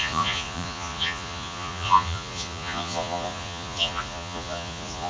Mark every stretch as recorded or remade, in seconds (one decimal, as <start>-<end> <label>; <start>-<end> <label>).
0.0-5.1 remade